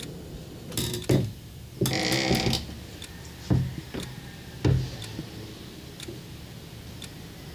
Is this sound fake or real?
real